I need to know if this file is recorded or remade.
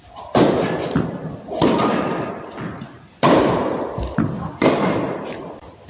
recorded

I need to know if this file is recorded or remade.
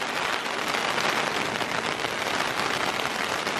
recorded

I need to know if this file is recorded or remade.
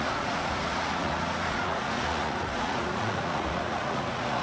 remade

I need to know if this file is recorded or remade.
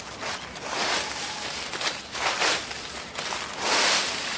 recorded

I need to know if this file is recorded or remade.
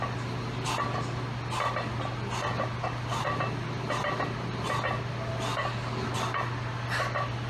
recorded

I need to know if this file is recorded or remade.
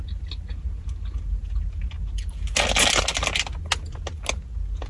recorded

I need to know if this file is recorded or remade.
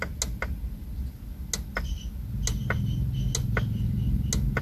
recorded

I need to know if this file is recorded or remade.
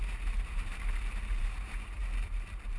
remade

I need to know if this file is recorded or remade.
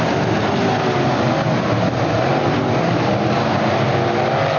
recorded